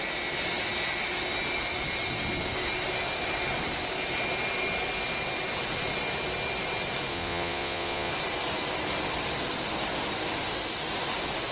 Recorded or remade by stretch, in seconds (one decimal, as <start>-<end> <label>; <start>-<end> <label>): 0.0-7.1 recorded; 7.1-8.1 remade; 8.1-11.5 recorded